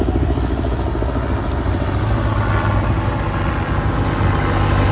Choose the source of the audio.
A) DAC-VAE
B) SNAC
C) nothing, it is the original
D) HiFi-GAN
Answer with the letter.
C